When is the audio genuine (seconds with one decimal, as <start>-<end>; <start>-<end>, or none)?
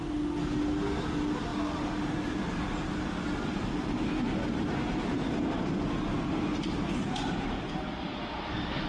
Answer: 0.0-7.0; 7.7-8.9